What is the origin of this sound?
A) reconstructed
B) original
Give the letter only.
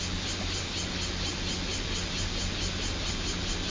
B